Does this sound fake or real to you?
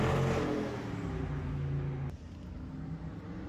real